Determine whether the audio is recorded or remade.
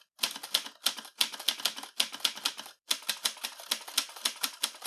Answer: recorded